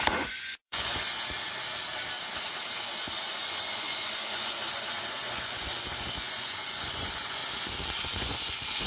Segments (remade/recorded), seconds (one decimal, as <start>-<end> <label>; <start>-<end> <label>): 0.0-1.1 remade; 1.1-3.0 recorded; 3.0-7.4 remade; 7.4-8.0 recorded; 8.0-8.9 remade